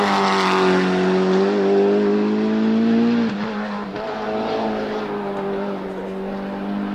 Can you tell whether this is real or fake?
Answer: real